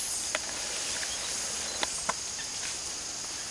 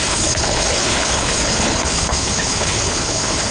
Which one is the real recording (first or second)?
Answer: first